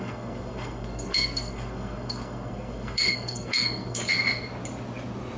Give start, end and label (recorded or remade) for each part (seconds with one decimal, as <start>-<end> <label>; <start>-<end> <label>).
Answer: 0.0-4.0 remade; 4.0-5.4 recorded